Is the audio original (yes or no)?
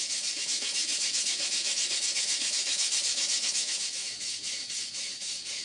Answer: no